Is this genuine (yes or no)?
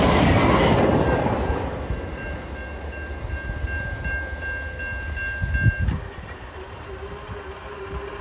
yes